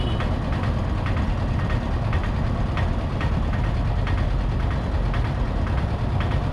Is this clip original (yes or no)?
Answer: yes